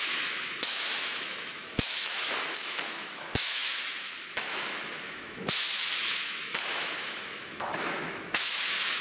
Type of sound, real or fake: fake